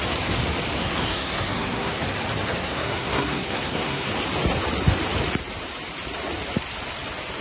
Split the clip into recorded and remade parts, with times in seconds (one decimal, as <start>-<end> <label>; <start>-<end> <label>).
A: 0.0-0.8 recorded; 0.8-2.0 remade; 2.0-2.6 recorded; 2.6-4.1 remade; 4.1-7.4 recorded